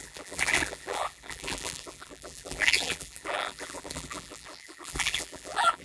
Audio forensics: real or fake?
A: fake